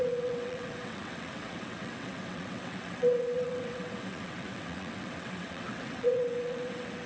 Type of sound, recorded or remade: remade